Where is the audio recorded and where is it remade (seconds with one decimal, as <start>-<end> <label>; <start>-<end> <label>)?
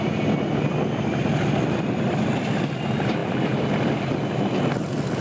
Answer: 0.0-5.2 recorded